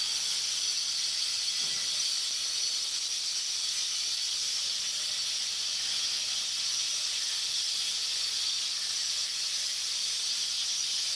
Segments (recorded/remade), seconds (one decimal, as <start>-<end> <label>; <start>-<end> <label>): 0.0-5.2 recorded; 5.2-8.3 remade; 8.3-11.2 recorded